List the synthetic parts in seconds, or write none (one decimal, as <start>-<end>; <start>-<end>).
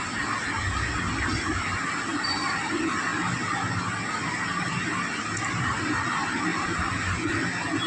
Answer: 2.1-2.7; 6.5-7.2